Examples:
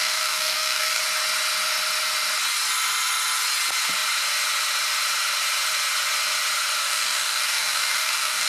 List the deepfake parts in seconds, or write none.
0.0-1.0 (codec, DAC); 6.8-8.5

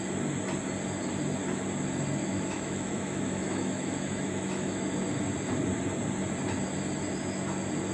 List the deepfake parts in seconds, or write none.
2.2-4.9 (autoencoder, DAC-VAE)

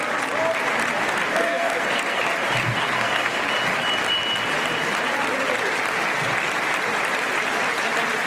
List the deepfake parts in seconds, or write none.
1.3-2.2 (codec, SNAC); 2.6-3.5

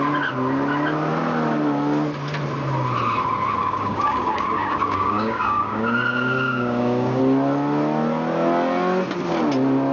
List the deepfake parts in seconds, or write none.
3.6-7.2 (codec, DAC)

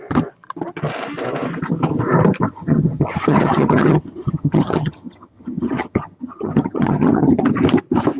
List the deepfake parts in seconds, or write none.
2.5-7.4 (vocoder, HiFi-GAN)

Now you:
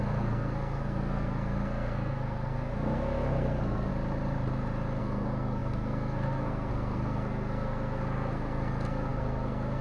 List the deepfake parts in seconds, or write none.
0.0-3.9 (codec, SNAC); 5.0-9.8